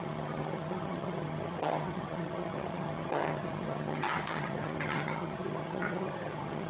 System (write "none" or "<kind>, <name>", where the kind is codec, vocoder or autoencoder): vocoder, HiFi-GAN